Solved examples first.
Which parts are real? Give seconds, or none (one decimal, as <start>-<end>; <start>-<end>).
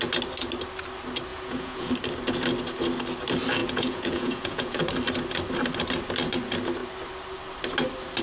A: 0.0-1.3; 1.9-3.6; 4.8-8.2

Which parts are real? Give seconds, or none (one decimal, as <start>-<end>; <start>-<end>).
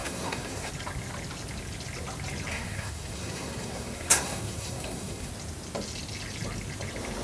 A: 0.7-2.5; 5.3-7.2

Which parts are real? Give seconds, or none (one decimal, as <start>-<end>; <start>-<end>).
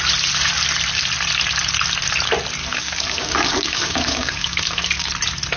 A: 0.0-2.6; 5.1-5.6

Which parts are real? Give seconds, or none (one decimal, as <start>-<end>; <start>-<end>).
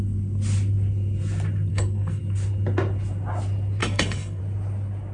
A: 0.0-1.7; 2.2-3.8; 4.4-5.1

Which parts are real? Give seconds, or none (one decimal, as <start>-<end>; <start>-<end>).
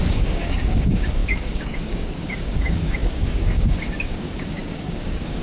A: none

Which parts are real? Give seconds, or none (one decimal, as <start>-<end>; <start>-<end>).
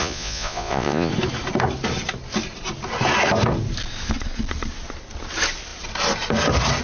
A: 1.1-6.8